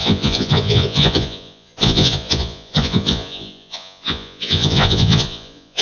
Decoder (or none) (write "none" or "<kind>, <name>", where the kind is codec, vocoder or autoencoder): vocoder, Vocos